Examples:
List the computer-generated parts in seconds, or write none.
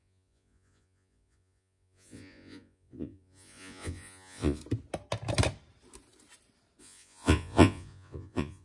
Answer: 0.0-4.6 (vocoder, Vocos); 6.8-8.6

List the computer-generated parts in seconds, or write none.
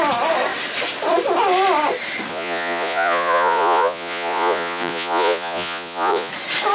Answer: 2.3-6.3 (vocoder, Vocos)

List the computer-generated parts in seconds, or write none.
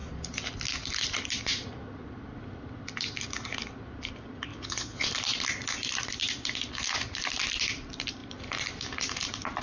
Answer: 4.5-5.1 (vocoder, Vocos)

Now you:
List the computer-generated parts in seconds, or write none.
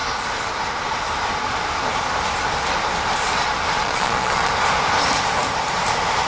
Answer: 3.8-4.5 (vocoder, Vocos)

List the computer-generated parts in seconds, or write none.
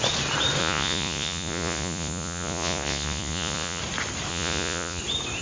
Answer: 0.6-3.8 (vocoder, Vocos); 4.3-5.0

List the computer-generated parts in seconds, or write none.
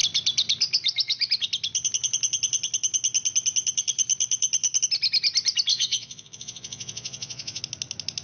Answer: 5.7-7.6 (vocoder, Vocos)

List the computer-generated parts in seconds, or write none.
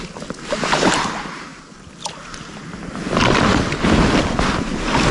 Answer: none